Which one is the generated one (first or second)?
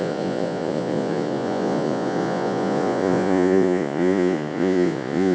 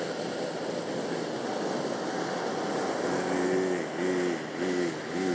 first